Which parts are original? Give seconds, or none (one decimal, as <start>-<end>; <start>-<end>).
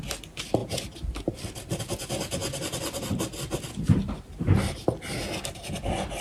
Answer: 0.0-6.2